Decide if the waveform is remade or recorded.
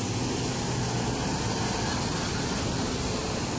recorded